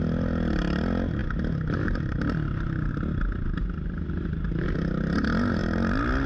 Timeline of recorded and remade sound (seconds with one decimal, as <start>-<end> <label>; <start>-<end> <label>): 0.0-6.3 recorded